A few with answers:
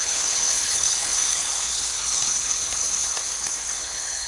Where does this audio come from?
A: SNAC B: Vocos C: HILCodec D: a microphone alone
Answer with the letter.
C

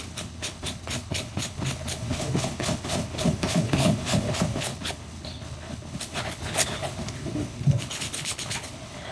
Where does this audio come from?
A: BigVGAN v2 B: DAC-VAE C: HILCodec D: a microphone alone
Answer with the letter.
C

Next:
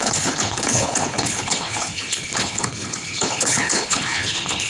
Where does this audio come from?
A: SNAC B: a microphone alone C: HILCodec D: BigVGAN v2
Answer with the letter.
C